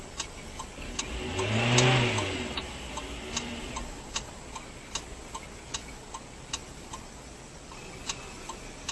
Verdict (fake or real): real